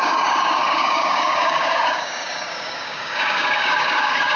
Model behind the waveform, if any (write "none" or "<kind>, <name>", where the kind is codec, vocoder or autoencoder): codec, DAC